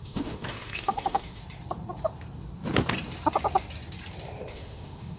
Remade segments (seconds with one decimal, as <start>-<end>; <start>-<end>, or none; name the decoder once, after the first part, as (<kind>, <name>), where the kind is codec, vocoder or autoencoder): 0.0-1.4 (autoencoder, DAC-VAE); 4.5-5.2